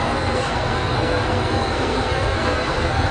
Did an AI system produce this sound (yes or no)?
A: yes